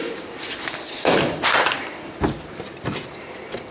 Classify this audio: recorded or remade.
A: remade